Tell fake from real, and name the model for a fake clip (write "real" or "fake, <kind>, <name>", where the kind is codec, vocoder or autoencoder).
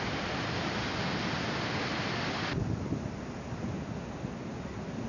real